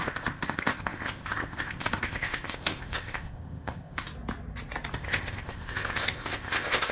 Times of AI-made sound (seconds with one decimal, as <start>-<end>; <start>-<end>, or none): 0.0-4.1; 4.9-6.9